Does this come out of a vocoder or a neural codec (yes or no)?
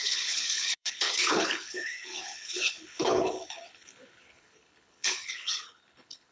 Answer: yes